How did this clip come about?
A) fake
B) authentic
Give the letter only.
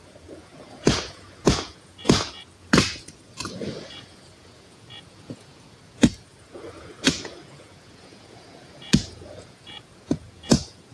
A